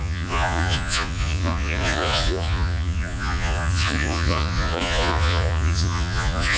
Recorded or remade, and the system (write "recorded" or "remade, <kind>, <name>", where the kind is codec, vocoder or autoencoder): remade, vocoder, Vocos